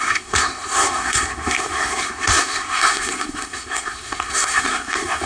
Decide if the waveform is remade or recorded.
remade